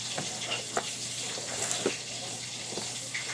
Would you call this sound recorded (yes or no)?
yes